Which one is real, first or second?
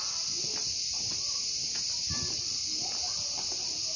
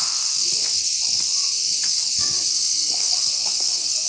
first